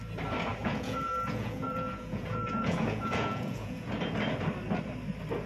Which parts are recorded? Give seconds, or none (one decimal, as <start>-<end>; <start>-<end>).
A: 0.0-0.6; 3.9-5.5